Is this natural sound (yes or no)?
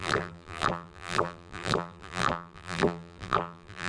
no